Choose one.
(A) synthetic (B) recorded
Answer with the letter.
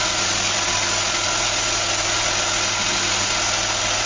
B